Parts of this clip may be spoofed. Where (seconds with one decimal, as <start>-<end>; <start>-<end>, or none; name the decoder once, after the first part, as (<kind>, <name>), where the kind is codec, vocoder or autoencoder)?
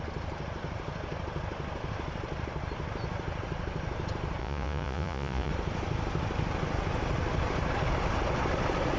4.4-5.5 (vocoder, Vocos)